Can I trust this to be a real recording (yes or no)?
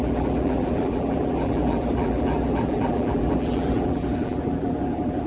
no